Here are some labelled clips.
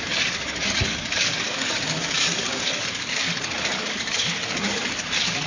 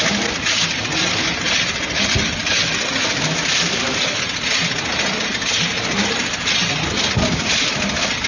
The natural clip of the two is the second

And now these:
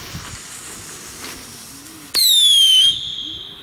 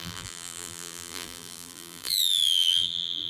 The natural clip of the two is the first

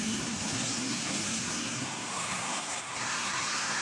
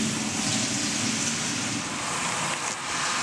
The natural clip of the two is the second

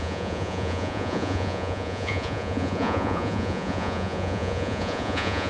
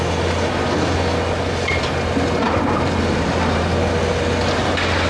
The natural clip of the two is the second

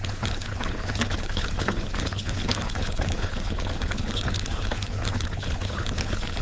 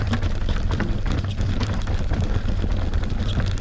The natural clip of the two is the second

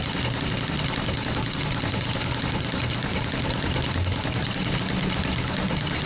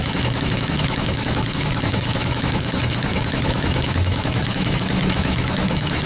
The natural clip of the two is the first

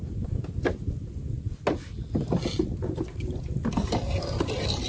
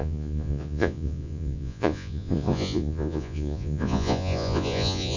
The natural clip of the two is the first